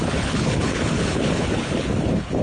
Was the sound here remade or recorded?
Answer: remade